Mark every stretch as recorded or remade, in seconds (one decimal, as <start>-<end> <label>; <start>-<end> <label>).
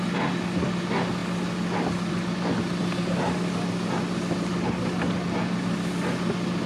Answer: 0.0-6.7 recorded